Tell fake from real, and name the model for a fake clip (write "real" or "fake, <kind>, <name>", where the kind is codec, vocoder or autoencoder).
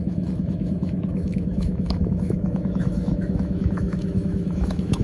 fake, autoencoder, DAC-VAE